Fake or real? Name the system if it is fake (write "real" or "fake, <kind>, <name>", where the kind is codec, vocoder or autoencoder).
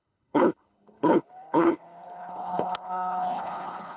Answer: fake, codec, HILCodec